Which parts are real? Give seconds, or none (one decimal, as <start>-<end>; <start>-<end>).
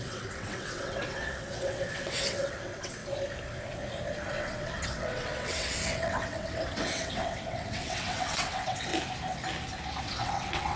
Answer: 3.0-4.3; 8.9-10.0